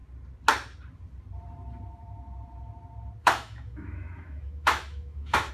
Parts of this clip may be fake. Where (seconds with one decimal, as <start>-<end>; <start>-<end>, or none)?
3.2-5.5